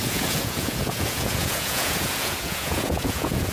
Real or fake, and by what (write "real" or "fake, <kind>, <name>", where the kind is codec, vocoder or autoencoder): fake, vocoder, Vocos